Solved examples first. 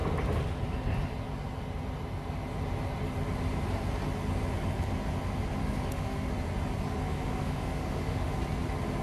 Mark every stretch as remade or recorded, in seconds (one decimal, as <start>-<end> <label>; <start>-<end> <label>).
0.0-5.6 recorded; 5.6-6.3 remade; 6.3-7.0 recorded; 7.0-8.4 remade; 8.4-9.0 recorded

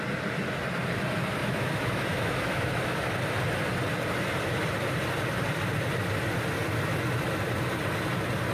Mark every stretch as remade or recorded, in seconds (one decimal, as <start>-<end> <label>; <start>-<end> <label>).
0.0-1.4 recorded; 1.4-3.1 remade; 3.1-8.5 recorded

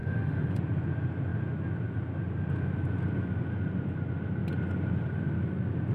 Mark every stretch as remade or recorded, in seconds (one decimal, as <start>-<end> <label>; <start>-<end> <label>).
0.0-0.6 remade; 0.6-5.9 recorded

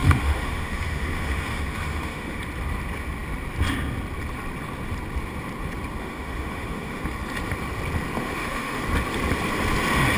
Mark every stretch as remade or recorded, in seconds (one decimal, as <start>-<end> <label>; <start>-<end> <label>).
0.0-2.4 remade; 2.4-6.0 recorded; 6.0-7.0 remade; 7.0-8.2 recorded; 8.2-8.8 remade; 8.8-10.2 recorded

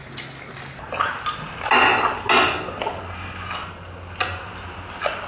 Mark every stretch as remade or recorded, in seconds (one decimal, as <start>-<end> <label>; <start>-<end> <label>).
0.0-5.3 recorded

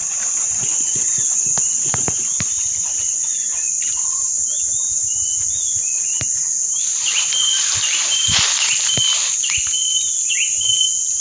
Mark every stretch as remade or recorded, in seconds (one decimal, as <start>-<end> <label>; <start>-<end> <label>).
0.0-11.2 recorded